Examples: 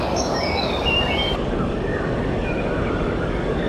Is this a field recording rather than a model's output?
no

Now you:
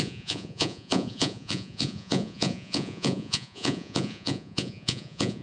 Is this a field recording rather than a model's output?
no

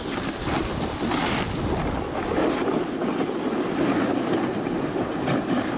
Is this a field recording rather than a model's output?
yes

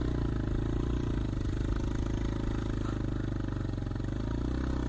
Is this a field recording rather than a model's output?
yes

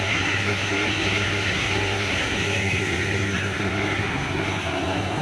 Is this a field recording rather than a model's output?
no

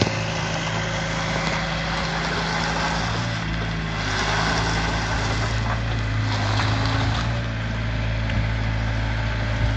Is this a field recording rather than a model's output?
yes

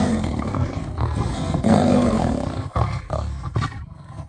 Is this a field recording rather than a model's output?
no